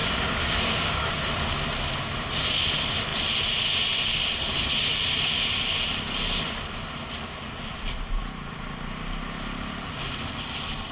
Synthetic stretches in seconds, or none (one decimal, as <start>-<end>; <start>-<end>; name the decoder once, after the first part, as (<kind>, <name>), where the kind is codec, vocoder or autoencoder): 0.0-1.1 (codec, DAC)